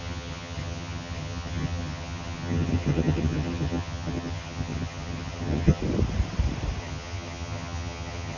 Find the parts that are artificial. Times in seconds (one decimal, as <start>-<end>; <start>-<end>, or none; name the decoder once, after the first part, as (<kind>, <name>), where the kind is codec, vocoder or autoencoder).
0.0-5.8 (vocoder, HiFi-GAN); 6.8-8.4